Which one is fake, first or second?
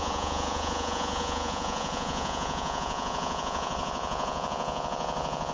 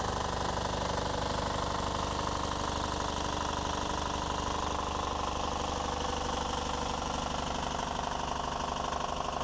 first